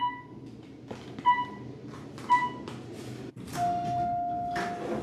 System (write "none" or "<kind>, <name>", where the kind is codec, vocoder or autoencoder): none